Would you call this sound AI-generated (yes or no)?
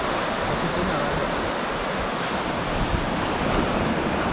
no